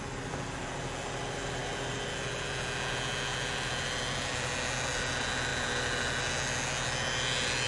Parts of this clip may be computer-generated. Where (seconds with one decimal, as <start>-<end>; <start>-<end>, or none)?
none